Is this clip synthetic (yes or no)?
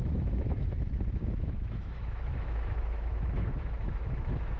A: yes